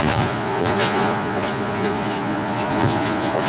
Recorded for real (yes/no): no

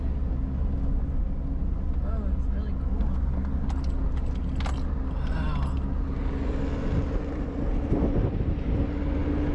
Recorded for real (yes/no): yes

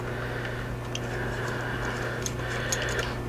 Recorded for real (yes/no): yes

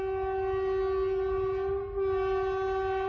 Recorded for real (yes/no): yes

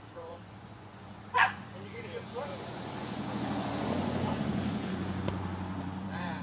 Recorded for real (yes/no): no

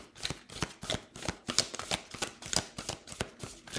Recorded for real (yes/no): yes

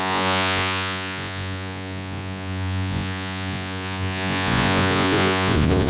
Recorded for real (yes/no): no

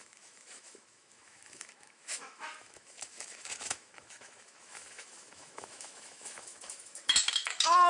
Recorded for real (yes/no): no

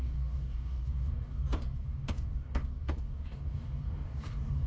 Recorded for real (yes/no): no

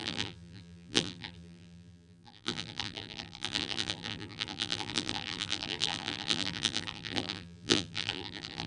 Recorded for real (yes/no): no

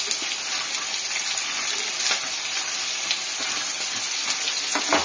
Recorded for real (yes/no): yes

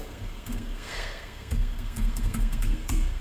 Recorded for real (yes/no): no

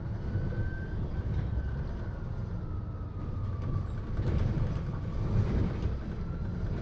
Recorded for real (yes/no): yes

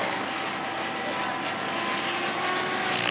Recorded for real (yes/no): yes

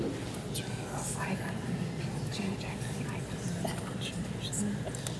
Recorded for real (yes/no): yes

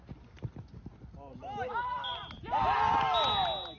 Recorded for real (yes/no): yes